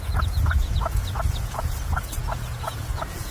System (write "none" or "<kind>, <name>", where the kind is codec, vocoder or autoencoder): vocoder, Vocos